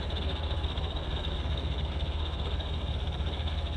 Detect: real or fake fake